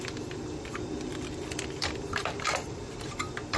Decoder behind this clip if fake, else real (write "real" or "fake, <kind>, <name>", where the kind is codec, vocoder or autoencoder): fake, vocoder, BigVGAN v2